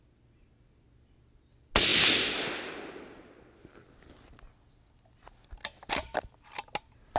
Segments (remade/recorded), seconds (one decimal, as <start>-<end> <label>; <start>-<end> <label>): 0.0-7.2 recorded